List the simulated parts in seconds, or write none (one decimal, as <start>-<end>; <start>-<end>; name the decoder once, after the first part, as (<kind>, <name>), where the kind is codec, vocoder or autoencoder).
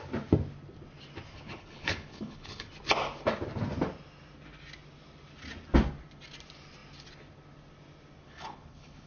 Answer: 1.3-2.7 (codec, HILCodec); 8.2-9.1